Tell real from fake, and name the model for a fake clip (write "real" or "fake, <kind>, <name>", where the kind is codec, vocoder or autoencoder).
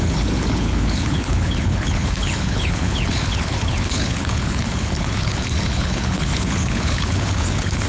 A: fake, codec, HILCodec